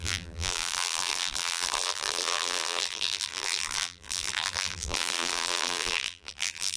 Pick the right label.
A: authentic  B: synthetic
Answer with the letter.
B